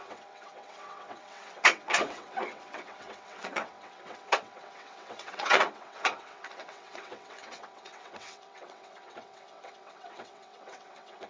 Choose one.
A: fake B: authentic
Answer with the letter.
A